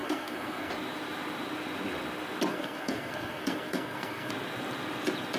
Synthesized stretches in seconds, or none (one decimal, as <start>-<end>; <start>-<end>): 0.0-0.7; 2.5-4.3